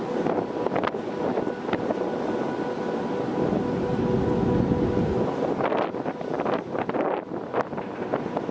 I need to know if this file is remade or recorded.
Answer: recorded